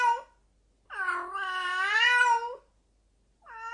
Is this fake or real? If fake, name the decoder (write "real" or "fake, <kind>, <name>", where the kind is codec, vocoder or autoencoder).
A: real